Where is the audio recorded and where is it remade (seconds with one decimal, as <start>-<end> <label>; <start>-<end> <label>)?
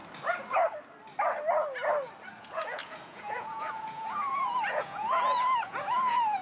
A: 0.0-2.4 recorded; 2.4-6.4 remade